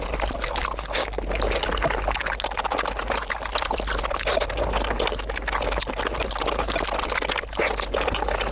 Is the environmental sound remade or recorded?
recorded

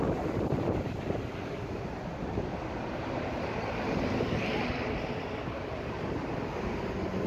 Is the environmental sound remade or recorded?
recorded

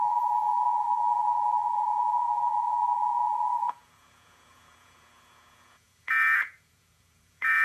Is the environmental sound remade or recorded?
remade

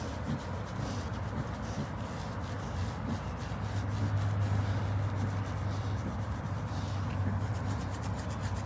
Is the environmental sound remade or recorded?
recorded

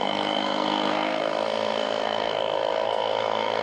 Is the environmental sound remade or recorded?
remade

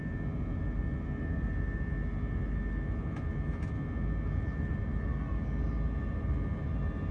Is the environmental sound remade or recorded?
recorded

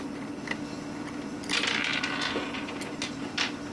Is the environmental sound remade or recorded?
recorded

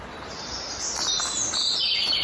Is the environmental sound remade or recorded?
recorded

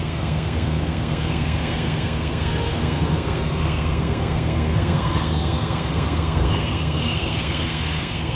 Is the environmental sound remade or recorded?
remade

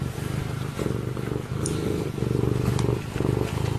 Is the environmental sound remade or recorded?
recorded